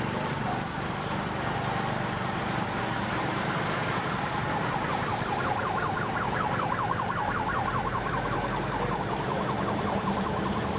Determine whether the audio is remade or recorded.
remade